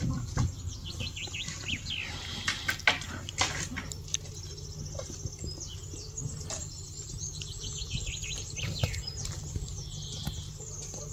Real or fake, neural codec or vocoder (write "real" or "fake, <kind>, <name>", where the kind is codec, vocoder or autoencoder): real